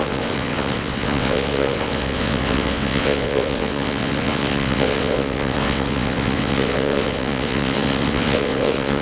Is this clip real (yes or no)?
no